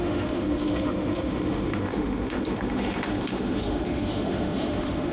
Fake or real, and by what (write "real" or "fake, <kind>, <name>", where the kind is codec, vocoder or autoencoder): fake, autoencoder, DAC-VAE